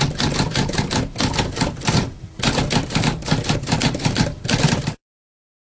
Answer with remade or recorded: remade